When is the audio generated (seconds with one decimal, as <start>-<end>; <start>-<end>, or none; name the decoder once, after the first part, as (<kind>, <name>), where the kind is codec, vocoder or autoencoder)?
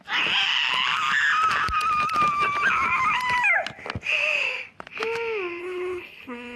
5.6-6.6 (codec, HILCodec)